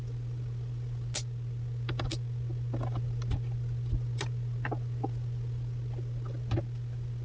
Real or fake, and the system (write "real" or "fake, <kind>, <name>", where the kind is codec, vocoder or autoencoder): real